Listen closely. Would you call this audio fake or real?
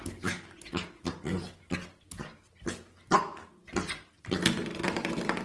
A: real